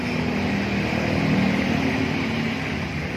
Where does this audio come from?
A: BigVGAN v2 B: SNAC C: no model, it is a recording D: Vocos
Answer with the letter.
C